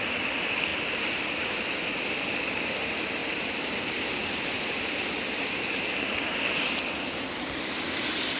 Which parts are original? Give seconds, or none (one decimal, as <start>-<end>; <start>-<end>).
0.0-8.4